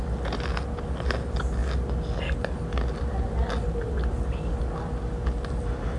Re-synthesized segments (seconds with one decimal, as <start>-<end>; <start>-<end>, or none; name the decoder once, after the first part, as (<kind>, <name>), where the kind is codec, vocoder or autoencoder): none